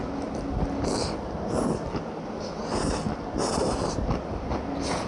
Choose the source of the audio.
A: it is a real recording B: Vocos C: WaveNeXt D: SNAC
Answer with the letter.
A